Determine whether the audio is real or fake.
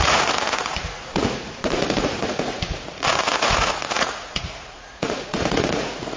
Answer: fake